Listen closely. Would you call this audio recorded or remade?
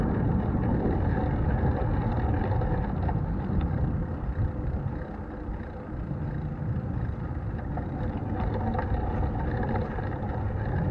recorded